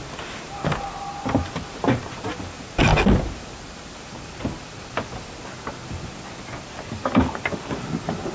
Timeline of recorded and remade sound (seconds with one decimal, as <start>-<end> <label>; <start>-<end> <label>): 0.0-8.3 recorded